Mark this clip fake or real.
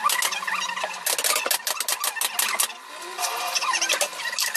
real